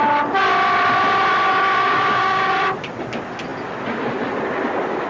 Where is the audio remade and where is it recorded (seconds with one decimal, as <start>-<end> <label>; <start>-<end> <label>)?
0.0-1.5 recorded; 1.5-2.5 remade; 2.5-5.1 recorded